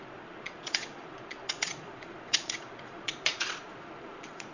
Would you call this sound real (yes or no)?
no